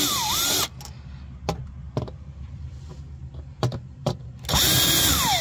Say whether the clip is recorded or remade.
recorded